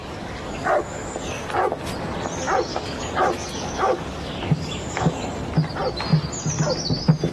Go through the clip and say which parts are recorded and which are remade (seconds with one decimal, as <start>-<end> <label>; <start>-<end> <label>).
0.0-1.1 remade; 1.1-2.7 recorded; 2.7-5.1 remade; 5.1-7.3 recorded